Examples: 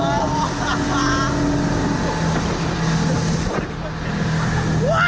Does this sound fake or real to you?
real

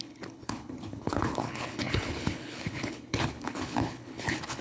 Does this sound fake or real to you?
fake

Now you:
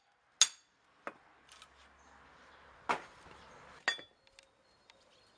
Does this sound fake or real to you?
real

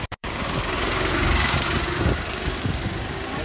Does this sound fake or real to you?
fake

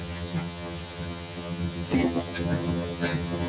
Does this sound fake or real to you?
fake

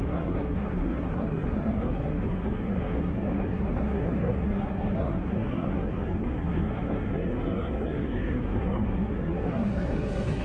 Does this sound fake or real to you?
fake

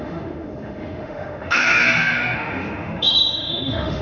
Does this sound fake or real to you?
fake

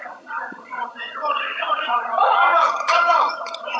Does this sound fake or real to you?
fake